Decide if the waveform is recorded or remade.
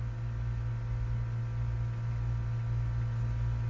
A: recorded